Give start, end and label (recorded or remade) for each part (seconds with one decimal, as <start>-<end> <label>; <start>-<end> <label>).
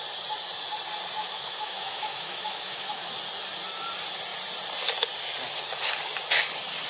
0.0-1.2 recorded; 1.2-3.1 remade; 3.1-6.9 recorded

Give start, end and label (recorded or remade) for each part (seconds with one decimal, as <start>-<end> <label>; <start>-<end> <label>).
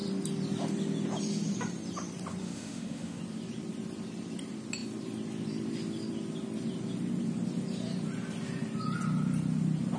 0.0-2.4 recorded; 2.4-3.2 remade; 3.2-10.0 recorded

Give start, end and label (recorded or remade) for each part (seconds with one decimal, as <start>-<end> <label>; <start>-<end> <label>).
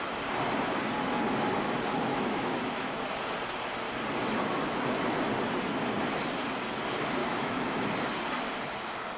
0.0-2.1 recorded; 2.1-2.9 remade; 2.9-7.2 recorded; 7.2-7.9 remade; 7.9-9.2 recorded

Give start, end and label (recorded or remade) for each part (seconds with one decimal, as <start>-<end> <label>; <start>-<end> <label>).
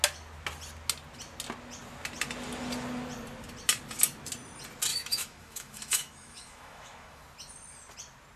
0.0-4.9 recorded; 4.9-7.2 remade; 7.2-8.4 recorded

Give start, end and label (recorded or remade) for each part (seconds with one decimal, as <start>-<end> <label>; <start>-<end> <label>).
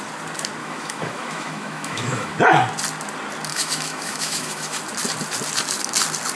0.0-0.6 recorded; 0.6-2.3 remade; 2.3-3.5 recorded; 3.5-4.8 remade; 4.8-6.4 recorded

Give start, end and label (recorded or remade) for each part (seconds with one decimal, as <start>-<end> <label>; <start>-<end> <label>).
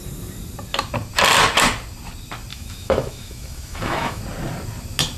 0.0-2.5 recorded; 2.5-4.2 remade; 4.2-5.2 recorded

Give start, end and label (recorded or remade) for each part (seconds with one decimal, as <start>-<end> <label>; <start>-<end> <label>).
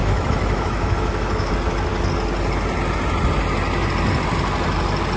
0.0-1.5 remade; 1.5-5.2 recorded